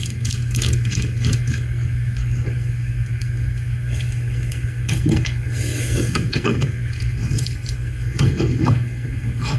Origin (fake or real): fake